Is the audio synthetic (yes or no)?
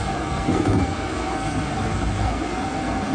yes